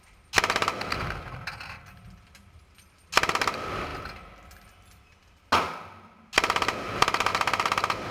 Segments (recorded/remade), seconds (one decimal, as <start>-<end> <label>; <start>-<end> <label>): 0.0-8.1 recorded